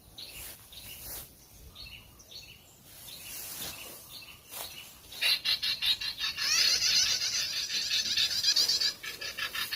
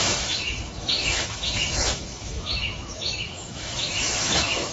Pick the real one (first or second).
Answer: first